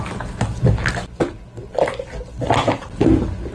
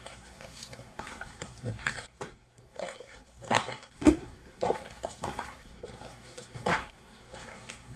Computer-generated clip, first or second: second